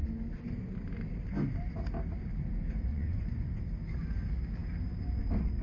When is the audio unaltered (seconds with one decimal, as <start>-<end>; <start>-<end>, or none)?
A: 0.0-2.9; 3.5-5.6